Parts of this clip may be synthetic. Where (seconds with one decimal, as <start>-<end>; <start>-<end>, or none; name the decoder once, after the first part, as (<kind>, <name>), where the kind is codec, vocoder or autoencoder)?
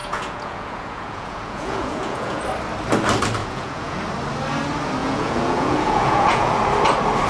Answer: 0.0-2.4 (vocoder, Vocos); 3.4-4.0; 5.0-6.5